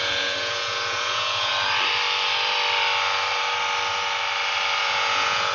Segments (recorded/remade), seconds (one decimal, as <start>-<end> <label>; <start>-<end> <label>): 0.0-1.5 remade; 1.5-4.8 recorded; 4.8-5.5 remade